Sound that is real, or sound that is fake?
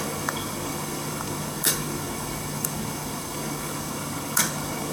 fake